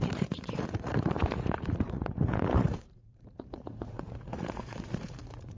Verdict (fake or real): fake